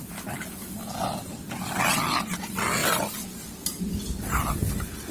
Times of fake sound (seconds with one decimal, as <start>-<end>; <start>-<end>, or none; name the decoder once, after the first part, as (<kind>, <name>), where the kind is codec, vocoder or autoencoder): none